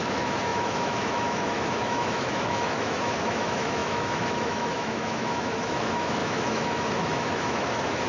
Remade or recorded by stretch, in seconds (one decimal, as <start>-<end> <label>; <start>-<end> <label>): 0.0-8.1 remade